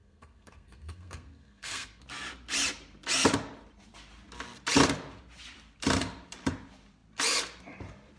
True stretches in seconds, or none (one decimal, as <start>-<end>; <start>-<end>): 2.0-8.2